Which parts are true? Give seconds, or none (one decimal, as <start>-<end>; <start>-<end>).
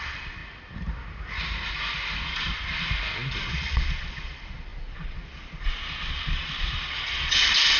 0.4-3.4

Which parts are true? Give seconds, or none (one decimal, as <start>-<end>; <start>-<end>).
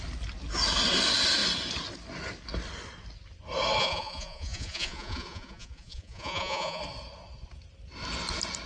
0.0-3.8; 6.8-8.7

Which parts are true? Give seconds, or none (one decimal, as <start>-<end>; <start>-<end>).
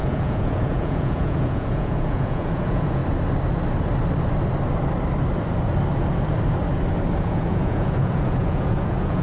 3.0-7.2